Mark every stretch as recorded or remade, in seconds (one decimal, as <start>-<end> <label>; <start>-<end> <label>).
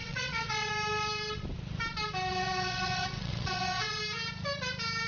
0.0-0.7 remade; 0.7-2.3 recorded; 2.3-4.0 remade; 4.0-5.1 recorded